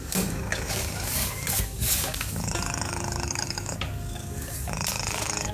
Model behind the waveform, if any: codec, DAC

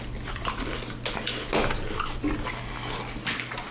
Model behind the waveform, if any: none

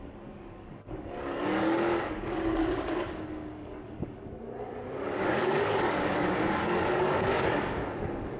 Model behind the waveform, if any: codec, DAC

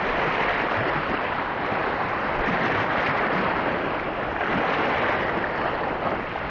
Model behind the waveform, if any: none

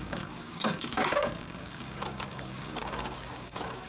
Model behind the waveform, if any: codec, DAC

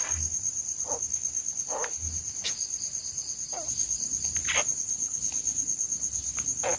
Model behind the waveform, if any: none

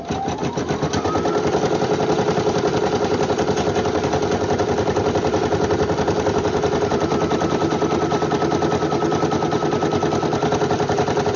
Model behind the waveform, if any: none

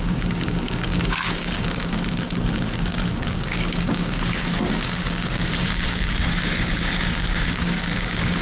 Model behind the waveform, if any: codec, DAC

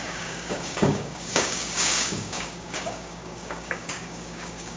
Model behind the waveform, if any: codec, DAC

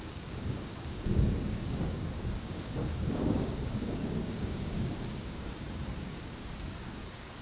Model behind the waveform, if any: codec, DAC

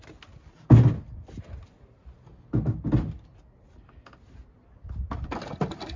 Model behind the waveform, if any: none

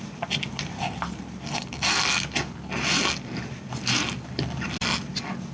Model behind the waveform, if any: none